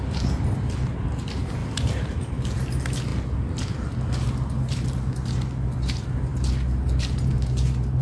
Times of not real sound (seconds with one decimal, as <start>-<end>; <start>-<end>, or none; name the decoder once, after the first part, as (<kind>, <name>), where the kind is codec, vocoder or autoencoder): 1.6-2.1 (vocoder, BigVGAN v2)